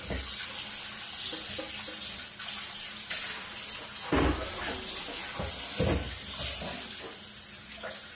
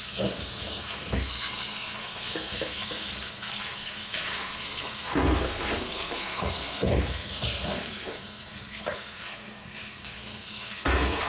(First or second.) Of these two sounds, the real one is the first